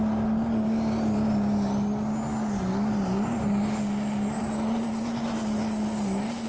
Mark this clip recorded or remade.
recorded